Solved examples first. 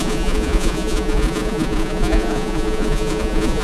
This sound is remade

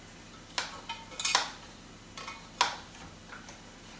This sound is recorded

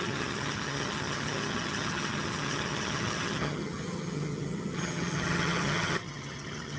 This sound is remade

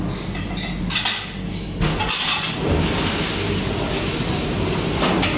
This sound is recorded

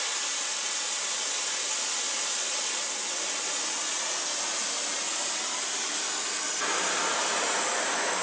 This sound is recorded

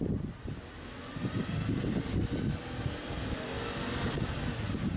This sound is recorded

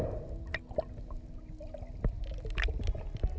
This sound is recorded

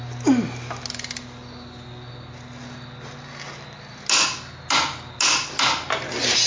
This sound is recorded